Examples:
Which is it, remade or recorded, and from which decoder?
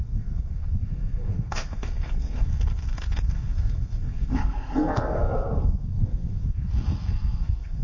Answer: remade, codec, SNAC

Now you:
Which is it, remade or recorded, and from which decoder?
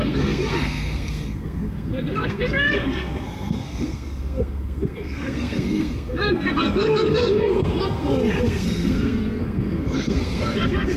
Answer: remade, codec, SNAC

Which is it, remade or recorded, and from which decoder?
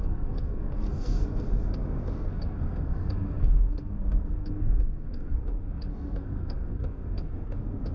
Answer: remade, codec, SNAC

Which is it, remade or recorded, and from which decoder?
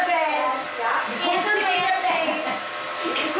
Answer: recorded